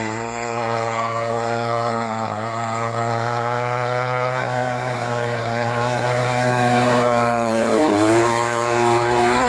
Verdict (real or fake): fake